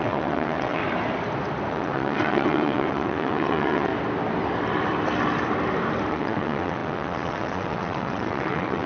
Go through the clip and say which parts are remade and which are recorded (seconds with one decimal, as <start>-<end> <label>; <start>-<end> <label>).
0.0-0.8 remade; 0.8-1.7 recorded; 1.7-3.9 remade; 3.9-6.1 recorded; 6.1-8.9 remade